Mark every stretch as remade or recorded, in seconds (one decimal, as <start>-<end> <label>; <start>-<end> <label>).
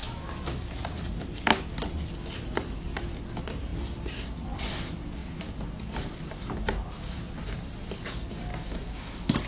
0.0-3.7 recorded; 3.7-4.7 remade; 4.7-5.2 recorded; 5.2-6.9 remade; 6.9-9.5 recorded